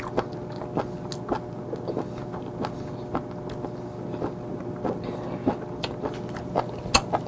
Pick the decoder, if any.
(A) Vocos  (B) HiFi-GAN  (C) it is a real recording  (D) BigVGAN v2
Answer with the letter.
C